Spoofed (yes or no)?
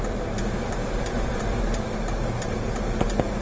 yes